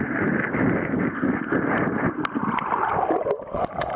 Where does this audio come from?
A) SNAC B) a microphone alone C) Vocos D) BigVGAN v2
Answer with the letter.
D